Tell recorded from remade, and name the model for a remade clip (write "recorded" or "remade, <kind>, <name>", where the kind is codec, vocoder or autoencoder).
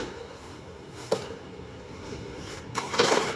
remade, codec, SNAC